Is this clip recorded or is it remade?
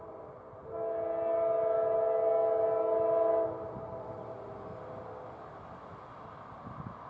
recorded